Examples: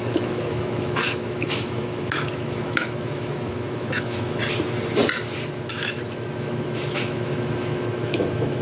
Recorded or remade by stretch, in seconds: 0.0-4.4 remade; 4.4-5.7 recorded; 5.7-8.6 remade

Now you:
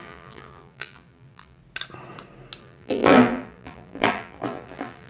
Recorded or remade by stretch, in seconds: 0.0-1.6 remade; 1.6-2.6 recorded; 2.6-5.1 remade

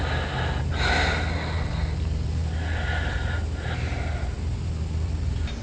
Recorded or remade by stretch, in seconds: 0.0-5.6 recorded

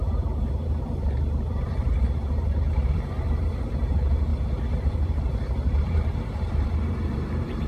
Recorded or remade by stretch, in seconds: 0.0-4.3 remade; 4.3-4.8 recorded; 4.8-7.7 remade

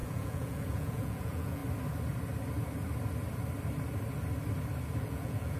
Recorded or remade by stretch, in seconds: 0.0-1.6 remade; 1.6-5.0 recorded; 5.0-5.6 remade

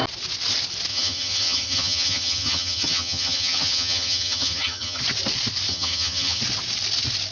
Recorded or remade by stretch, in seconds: 0.0-0.9 recorded; 0.9-5.0 remade; 5.0-5.7 recorded; 5.7-6.4 remade; 6.4-7.3 recorded

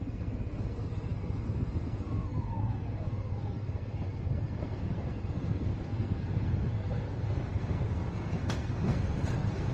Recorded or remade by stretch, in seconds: 0.0-9.7 remade